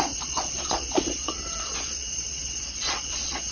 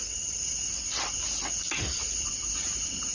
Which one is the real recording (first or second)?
second